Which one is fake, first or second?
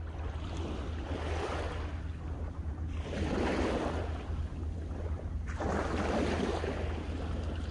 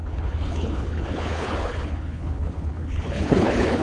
second